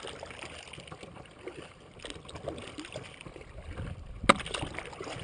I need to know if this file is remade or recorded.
recorded